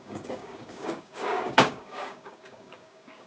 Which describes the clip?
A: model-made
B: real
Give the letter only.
A